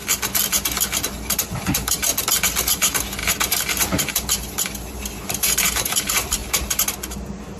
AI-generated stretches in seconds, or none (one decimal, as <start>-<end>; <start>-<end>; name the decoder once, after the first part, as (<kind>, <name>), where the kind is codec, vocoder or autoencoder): 1.1-2.1 (vocoder, BigVGAN v2); 2.7-7.6